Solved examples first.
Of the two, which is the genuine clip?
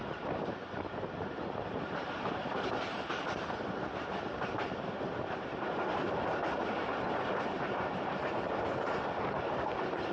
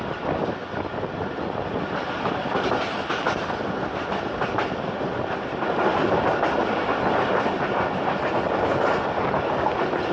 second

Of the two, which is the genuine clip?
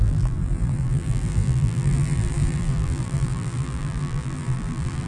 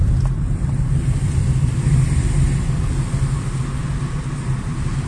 second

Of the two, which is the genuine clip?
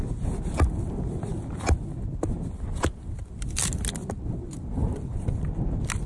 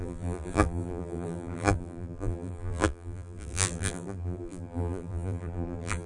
first